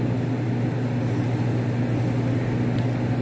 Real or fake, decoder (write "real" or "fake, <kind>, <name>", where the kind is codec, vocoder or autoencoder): real